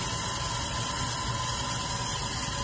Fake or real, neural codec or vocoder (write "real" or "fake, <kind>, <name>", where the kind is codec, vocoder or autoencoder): real